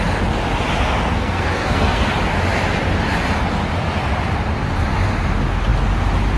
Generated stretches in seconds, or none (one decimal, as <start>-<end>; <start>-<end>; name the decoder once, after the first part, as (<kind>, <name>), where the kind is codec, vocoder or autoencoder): 1.1-2.1 (codec, SNAC)